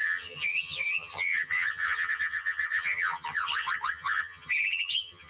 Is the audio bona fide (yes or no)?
no